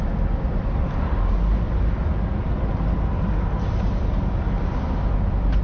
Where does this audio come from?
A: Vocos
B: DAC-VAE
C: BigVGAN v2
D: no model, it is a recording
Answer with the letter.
D